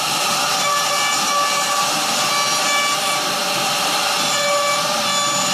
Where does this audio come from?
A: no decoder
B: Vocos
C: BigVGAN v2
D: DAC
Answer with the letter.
A